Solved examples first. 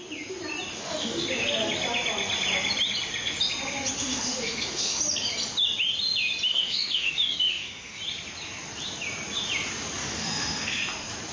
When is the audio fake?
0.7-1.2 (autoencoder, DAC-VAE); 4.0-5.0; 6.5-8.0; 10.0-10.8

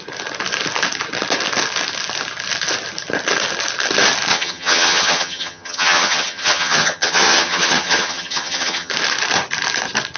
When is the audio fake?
4.3-8.9 (vocoder, HiFi-GAN)

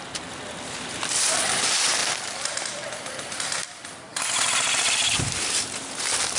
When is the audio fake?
none

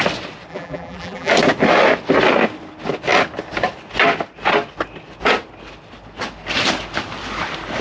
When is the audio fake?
0.5-1.3 (vocoder, BigVGAN v2)

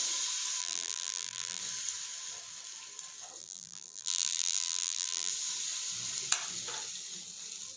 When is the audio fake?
0.6-1.6 (vocoder, BigVGAN v2); 3.4-5.3

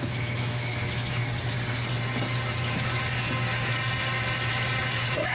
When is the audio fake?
0.0-1.2 (autoencoder, DAC-VAE); 2.5-3.0; 4.8-5.3

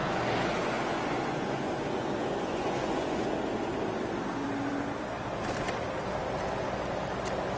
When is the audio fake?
0.0-3.3 (vocoder, Vocos)